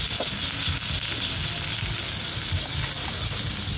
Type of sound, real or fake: real